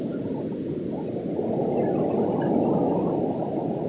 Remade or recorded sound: recorded